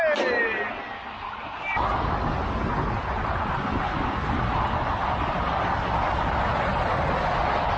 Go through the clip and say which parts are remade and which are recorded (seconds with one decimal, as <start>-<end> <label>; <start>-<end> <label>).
0.0-7.8 recorded